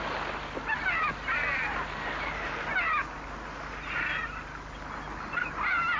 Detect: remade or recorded recorded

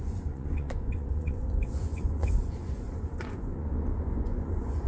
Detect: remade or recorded remade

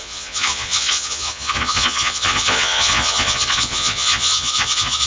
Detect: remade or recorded remade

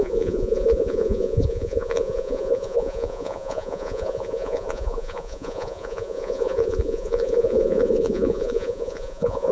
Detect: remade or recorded remade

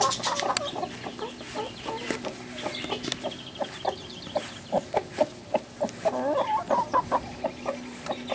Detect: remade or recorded recorded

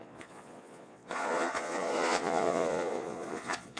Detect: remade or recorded remade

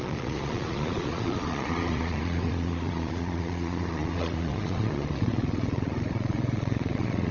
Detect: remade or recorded remade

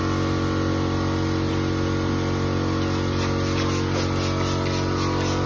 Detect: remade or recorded recorded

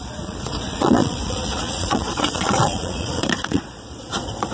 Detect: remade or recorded remade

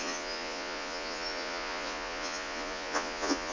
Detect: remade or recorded remade